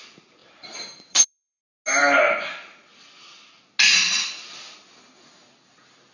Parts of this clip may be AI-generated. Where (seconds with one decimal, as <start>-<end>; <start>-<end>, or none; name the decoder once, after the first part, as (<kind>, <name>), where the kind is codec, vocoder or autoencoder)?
0.4-1.6 (vocoder, BigVGAN v2)